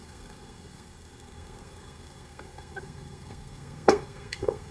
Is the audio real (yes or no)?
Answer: no